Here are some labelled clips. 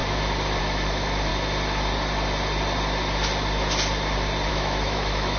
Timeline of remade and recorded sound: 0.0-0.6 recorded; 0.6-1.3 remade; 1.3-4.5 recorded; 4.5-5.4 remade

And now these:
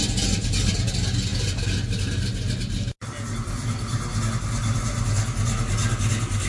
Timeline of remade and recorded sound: 0.0-6.5 recorded

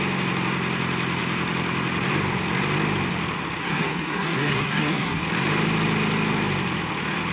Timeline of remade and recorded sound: 0.0-3.6 recorded; 3.6-5.2 remade; 5.2-7.3 recorded